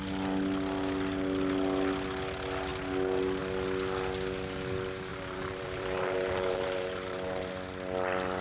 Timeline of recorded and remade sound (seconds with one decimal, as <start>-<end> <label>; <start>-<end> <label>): 0.0-5.1 recorded; 5.1-7.5 remade; 7.5-8.4 recorded